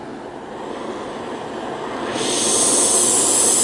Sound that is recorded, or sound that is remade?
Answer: recorded